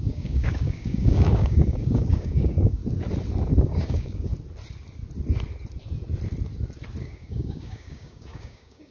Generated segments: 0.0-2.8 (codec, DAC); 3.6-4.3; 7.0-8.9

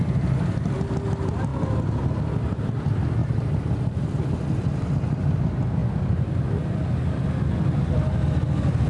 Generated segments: 1.5-2.2 (vocoder, BigVGAN v2); 3.2-4.3

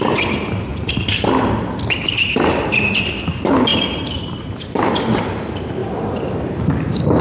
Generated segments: 0.7-1.2 (vocoder, BigVGAN v2); 3.7-5.2; 5.8-6.6